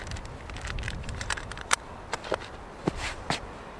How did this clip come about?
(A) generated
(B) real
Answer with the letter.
A